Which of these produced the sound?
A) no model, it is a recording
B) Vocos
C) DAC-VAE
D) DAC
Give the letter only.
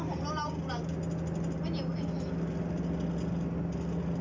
A